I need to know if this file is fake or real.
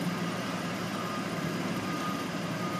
fake